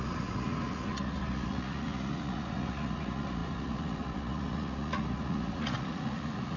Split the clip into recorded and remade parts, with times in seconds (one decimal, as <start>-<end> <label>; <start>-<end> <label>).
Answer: 0.0-6.6 remade